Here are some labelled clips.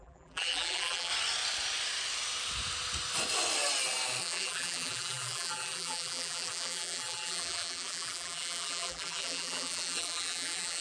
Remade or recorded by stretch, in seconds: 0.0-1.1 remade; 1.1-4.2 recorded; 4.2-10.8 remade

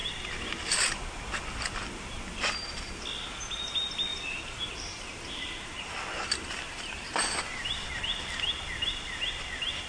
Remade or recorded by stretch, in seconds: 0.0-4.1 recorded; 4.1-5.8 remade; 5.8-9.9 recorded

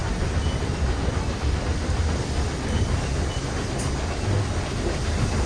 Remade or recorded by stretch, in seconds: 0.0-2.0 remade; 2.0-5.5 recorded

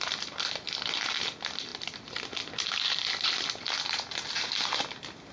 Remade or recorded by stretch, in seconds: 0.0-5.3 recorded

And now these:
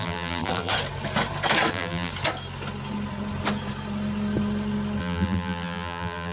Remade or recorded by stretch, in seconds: 0.0-0.7 remade; 0.7-1.7 recorded; 1.7-2.1 remade; 2.1-5.0 recorded; 5.0-6.3 remade

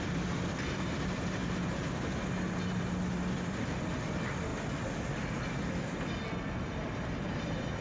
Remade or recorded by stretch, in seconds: 0.0-1.4 remade; 1.4-2.6 recorded; 2.6-7.8 remade

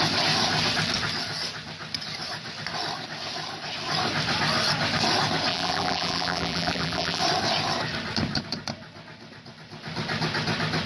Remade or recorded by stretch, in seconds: 0.0-5.5 recorded; 5.5-7.2 remade; 7.2-10.9 recorded

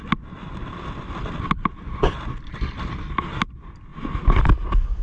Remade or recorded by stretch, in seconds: 0.0-5.0 recorded